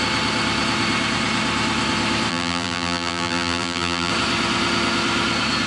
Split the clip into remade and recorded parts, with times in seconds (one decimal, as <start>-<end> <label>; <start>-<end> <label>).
0.0-2.3 recorded; 2.3-4.1 remade; 4.1-5.7 recorded